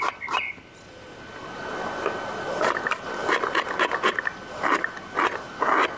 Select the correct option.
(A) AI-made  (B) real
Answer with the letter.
B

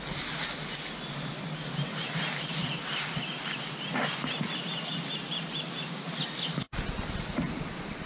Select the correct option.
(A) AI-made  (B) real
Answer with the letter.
B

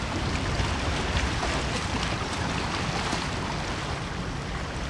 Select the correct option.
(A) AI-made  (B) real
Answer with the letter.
B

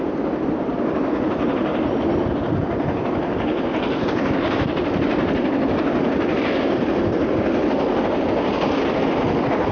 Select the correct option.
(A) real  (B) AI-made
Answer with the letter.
A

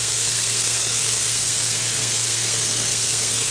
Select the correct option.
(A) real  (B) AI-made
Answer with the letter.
B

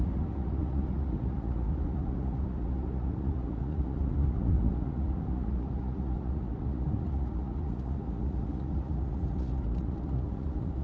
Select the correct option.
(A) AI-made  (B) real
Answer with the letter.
A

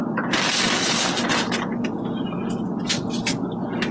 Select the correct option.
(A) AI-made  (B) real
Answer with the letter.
B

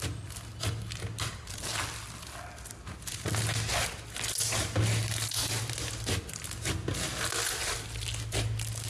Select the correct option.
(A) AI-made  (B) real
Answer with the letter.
B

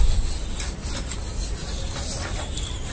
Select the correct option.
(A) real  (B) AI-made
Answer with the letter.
A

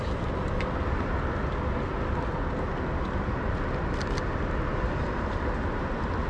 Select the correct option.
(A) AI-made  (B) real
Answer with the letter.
B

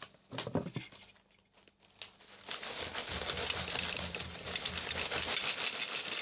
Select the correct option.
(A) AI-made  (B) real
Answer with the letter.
B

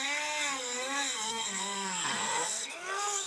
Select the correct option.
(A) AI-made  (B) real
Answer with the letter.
A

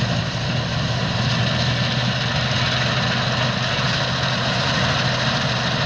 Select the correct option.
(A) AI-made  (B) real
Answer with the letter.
B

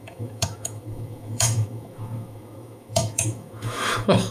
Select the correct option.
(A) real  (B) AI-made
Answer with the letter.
B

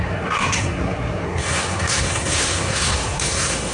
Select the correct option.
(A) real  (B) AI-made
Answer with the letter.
B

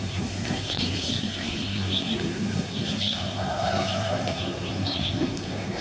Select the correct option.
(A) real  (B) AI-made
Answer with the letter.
B